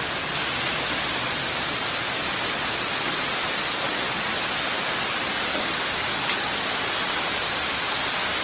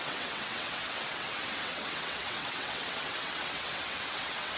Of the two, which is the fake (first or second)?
second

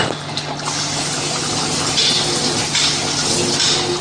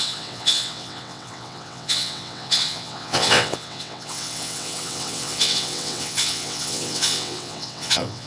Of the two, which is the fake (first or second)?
second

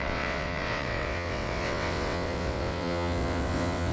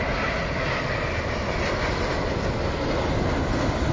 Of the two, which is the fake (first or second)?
first